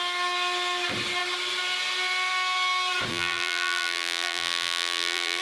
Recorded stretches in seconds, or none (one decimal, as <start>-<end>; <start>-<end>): 0.0-3.1